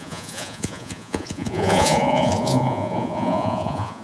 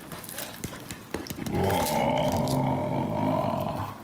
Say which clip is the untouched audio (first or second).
second